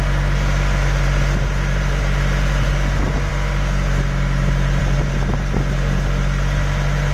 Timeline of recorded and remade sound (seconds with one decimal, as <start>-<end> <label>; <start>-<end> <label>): 0.0-7.1 recorded